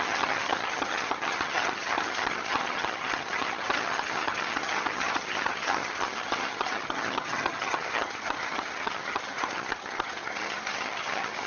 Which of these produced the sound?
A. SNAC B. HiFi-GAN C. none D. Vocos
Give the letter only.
B